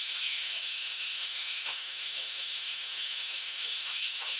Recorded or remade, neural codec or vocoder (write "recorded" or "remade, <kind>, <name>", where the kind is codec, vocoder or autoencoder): remade, autoencoder, DAC-VAE